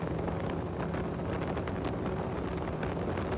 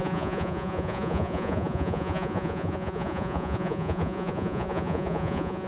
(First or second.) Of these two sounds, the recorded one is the first